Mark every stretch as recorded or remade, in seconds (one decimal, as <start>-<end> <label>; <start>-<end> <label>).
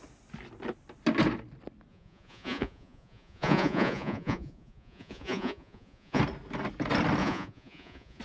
0.0-1.9 recorded; 1.9-6.2 remade; 6.2-7.2 recorded; 7.2-8.2 remade